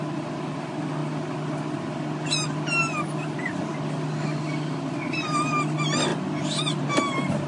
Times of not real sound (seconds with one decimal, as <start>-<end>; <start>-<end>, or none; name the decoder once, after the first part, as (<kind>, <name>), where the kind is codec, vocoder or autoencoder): none